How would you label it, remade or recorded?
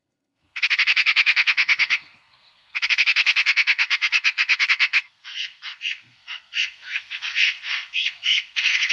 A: remade